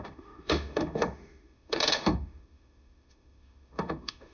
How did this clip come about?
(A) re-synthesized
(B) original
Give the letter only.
A